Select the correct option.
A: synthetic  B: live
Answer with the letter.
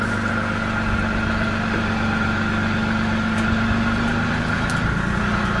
B